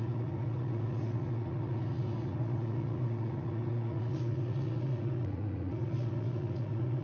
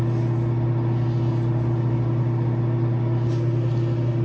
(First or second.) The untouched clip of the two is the second